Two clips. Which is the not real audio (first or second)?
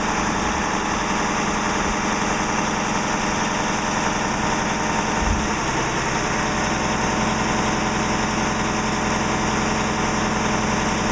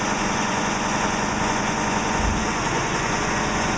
second